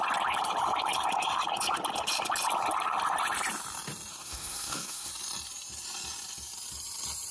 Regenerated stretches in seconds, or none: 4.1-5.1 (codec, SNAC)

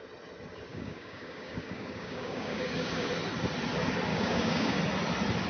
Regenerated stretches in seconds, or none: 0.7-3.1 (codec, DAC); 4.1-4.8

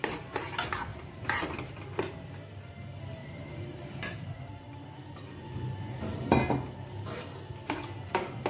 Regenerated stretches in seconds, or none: 3.2-4.7 (vocoder, BigVGAN v2)